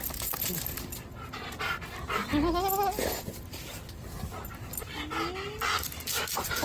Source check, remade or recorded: recorded